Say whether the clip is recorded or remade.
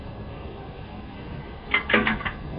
remade